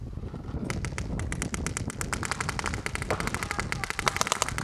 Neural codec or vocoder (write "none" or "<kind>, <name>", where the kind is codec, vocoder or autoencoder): none